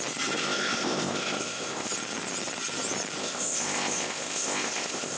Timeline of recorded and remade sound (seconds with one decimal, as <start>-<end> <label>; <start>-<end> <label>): 0.0-0.4 recorded; 0.4-1.9 remade; 1.9-3.2 recorded; 3.2-5.2 remade